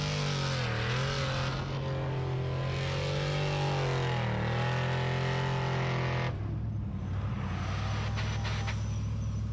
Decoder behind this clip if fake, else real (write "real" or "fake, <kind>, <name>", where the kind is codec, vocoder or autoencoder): real